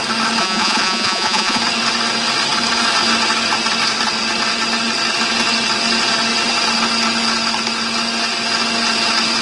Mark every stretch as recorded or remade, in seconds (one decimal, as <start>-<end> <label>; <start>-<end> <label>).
0.0-0.4 recorded; 0.4-1.6 remade; 1.6-9.4 recorded